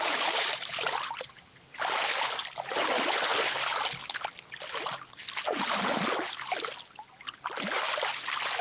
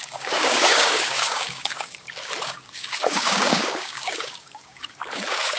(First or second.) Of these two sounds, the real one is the first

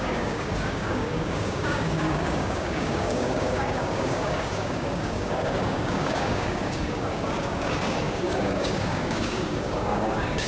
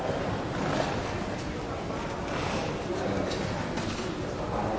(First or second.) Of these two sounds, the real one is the second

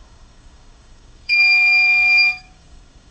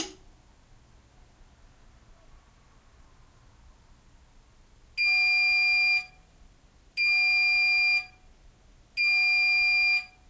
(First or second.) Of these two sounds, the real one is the second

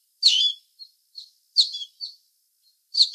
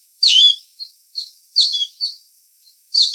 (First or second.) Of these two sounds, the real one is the first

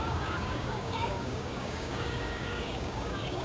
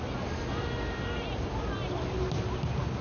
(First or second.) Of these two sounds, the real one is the second